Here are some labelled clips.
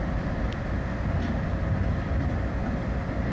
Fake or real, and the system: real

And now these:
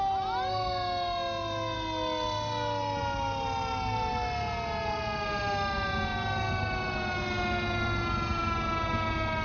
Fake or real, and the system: real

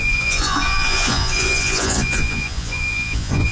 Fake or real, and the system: fake, vocoder, Vocos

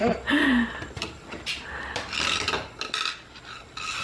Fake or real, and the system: real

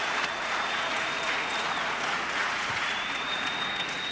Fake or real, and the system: fake, vocoder, Vocos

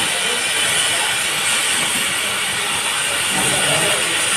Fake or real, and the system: real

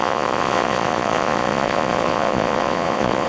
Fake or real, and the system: fake, vocoder, Vocos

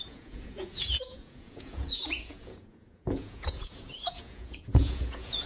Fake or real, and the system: fake, vocoder, Vocos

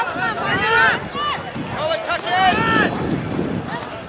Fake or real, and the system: real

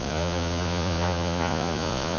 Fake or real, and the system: fake, vocoder, Vocos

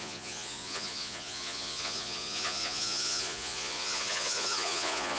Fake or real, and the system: fake, vocoder, Vocos